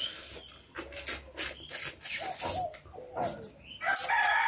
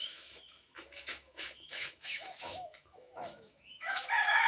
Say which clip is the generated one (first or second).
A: second